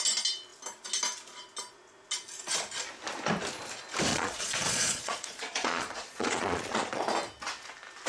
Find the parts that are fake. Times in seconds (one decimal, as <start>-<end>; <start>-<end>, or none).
4.1-7.0